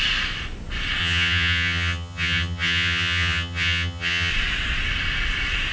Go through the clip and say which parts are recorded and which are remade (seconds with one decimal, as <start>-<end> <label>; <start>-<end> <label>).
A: 0.0-1.0 recorded; 1.0-4.3 remade; 4.3-5.7 recorded